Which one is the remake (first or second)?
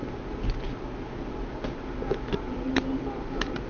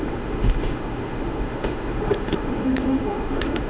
second